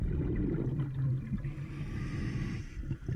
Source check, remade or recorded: recorded